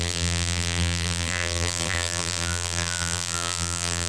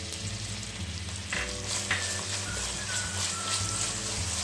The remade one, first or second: first